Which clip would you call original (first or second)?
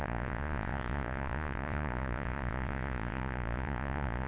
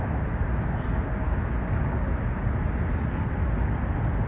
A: second